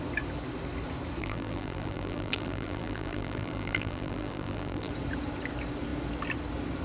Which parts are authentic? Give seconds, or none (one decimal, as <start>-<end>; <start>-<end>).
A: 0.0-1.2; 4.9-6.8